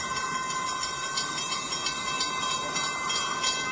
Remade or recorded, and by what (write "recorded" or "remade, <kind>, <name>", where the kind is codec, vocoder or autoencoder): recorded